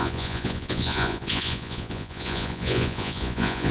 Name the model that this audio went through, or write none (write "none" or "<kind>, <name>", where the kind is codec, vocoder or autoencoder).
vocoder, Vocos